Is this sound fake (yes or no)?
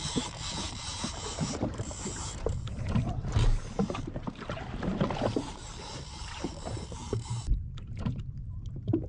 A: yes